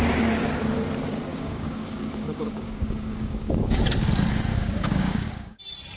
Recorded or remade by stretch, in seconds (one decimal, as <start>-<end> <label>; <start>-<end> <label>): 0.0-1.3 recorded; 1.3-3.8 remade; 3.8-4.5 recorded; 4.5-5.6 remade; 5.6-6.0 recorded